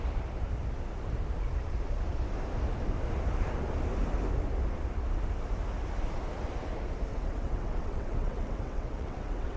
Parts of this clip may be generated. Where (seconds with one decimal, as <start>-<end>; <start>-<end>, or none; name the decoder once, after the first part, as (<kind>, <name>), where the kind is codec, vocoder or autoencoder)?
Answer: 7.1-9.6 (vocoder, WaveNeXt)